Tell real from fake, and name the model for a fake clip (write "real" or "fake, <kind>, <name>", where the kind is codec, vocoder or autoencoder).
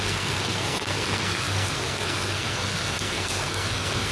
fake, codec, SNAC